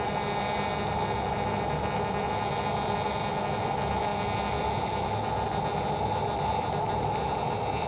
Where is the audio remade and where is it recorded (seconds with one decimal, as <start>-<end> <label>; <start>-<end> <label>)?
0.0-7.9 recorded